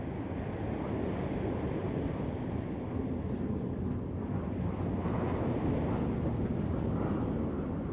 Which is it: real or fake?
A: real